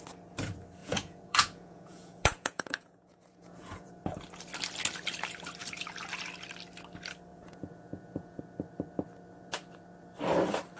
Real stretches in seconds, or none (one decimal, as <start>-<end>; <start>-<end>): 0.0-0.8; 3.9-7.3; 8.4-10.8